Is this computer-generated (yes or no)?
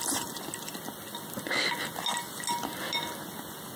no